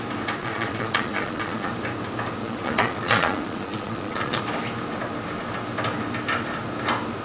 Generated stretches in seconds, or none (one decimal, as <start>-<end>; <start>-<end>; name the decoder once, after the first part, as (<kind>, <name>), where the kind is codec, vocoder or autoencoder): 0.4-1.7 (vocoder, Vocos); 2.4-4.4